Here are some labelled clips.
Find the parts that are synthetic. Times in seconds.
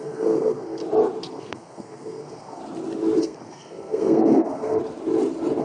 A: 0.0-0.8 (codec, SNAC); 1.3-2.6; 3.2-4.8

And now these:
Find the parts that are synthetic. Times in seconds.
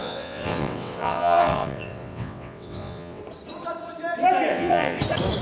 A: 0.0-3.2 (vocoder, WaveNeXt); 4.5-5.0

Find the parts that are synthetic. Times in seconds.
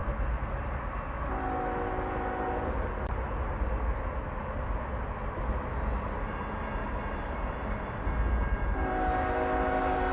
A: none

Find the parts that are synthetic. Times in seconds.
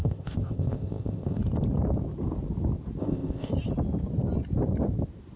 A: 0.0-1.4 (codec, ZipCodec); 3.0-3.5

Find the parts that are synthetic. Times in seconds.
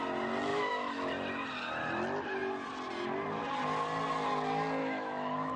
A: 0.5-1.1 (autoencoder, DAC-VAE); 4.8-5.6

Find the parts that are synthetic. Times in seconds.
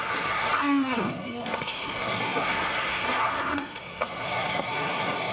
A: 0.0-5.3 (codec, SNAC)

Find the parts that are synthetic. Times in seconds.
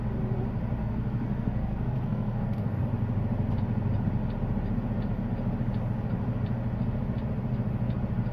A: 0.8-2.8 (codec, SNAC)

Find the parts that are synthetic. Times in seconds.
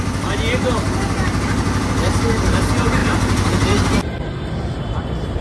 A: none